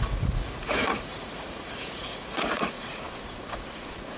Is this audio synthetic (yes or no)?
yes